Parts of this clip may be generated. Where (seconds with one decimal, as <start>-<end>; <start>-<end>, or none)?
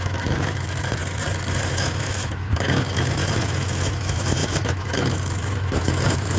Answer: 0.0-1.0; 1.7-6.4